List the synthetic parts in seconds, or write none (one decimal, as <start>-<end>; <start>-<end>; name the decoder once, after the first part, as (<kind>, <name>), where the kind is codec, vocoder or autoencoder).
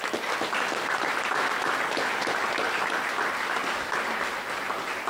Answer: none